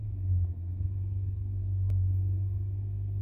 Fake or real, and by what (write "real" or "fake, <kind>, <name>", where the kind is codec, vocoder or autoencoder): fake, codec, SNAC